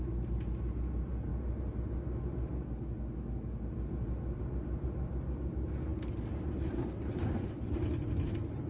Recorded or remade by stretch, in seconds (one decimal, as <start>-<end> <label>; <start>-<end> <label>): 0.0-8.7 recorded